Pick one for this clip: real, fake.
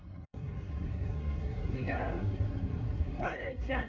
fake